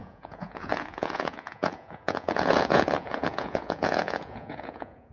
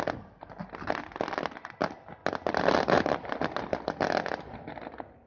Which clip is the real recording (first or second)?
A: second